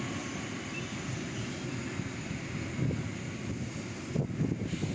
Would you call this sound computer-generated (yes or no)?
no